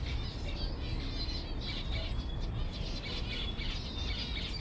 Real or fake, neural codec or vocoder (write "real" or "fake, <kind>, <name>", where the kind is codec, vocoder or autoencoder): real